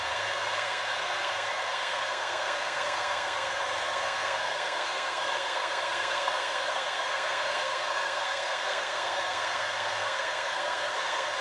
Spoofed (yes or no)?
yes